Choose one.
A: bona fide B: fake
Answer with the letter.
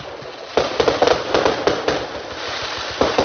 A